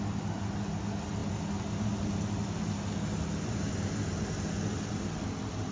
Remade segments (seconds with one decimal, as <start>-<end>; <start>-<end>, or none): none